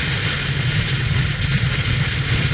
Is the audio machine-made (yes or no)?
no